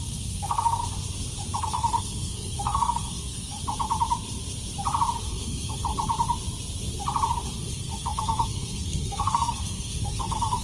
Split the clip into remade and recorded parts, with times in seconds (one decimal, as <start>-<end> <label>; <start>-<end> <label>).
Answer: 0.0-0.8 remade; 0.8-1.6 recorded; 1.6-3.6 remade; 3.6-5.2 recorded; 5.2-5.9 remade; 5.9-7.6 recorded; 7.6-10.6 remade